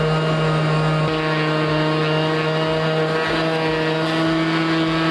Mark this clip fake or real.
real